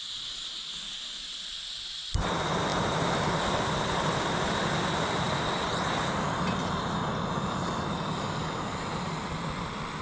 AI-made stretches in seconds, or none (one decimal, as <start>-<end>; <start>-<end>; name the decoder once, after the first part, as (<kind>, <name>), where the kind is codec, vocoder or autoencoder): none